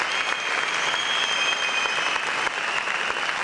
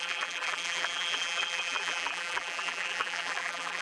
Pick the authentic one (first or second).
first